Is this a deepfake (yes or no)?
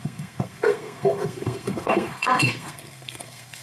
yes